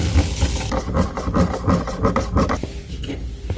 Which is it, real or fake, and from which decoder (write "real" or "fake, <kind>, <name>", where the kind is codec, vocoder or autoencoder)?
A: real